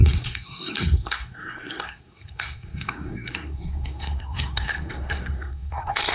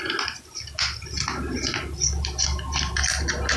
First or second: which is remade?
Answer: first